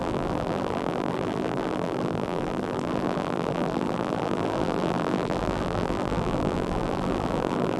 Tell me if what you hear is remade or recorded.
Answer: remade